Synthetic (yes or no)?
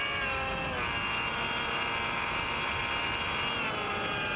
no